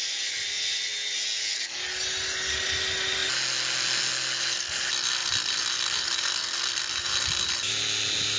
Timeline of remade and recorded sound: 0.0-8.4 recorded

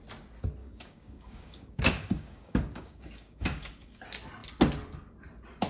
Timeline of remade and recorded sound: 0.0-0.6 recorded; 0.6-4.0 remade; 4.0-5.7 recorded

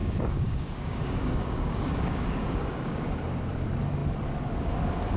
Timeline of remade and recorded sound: 0.0-3.1 remade; 3.1-5.2 recorded